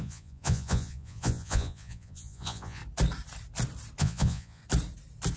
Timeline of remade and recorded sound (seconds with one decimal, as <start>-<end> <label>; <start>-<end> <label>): 0.0-2.8 remade; 2.8-4.0 recorded; 4.0-4.6 remade; 4.6-5.4 recorded

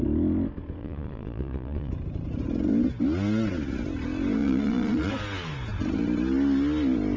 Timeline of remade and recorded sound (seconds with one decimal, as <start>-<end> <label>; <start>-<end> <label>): 0.0-0.8 recorded; 0.8-1.9 remade; 1.9-4.4 recorded; 4.4-5.1 remade; 5.1-7.2 recorded